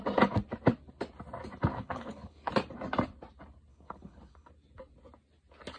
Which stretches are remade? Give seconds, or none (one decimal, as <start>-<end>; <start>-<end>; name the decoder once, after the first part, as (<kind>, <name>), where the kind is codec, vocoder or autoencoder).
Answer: 1.7-2.5 (codec, HILCodec); 3.7-4.5